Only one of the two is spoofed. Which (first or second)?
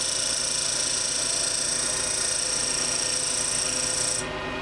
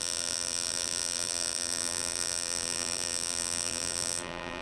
second